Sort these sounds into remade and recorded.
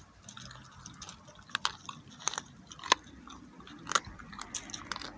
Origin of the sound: recorded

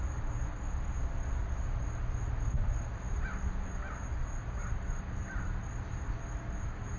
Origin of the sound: recorded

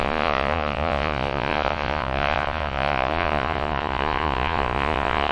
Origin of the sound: remade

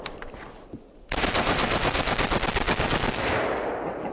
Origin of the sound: recorded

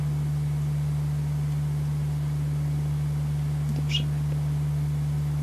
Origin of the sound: recorded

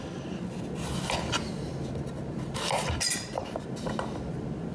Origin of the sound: recorded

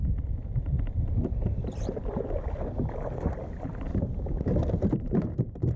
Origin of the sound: recorded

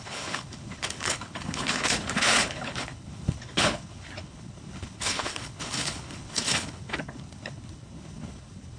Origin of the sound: remade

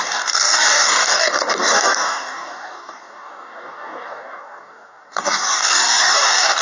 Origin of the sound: remade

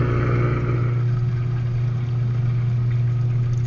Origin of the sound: recorded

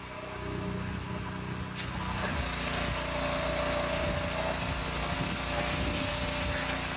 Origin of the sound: recorded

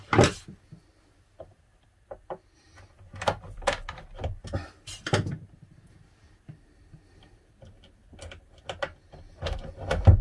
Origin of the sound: recorded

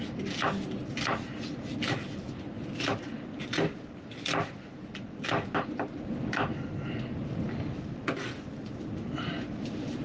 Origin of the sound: recorded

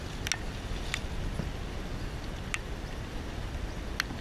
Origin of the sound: recorded